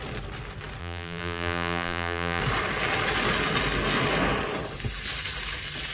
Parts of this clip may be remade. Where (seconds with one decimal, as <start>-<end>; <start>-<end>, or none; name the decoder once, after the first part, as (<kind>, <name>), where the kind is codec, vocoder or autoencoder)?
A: 0.8-2.4 (vocoder, BigVGAN v2)